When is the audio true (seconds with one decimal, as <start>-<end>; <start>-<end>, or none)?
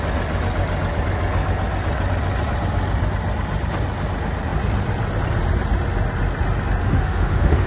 0.0-6.8